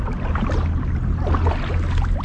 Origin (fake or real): real